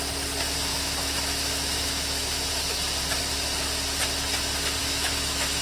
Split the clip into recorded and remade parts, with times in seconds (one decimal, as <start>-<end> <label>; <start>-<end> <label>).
0.0-0.7 recorded; 0.7-2.5 remade; 2.5-4.8 recorded; 4.8-5.6 remade